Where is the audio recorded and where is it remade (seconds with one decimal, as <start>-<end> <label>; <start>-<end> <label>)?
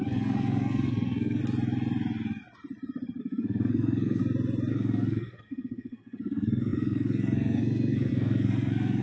0.0-1.4 remade; 1.4-3.2 recorded; 3.2-4.2 remade; 4.2-4.7 recorded; 4.7-9.0 remade